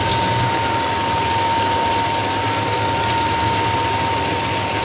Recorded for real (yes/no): yes